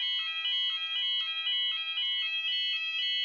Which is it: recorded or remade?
recorded